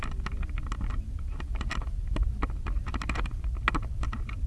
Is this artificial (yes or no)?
no